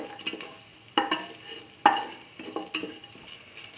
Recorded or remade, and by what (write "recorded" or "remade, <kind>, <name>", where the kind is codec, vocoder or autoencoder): recorded